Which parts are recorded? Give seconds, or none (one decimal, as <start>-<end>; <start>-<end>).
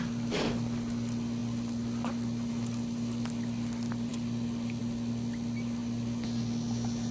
0.0-4.1; 4.8-5.8; 6.4-7.1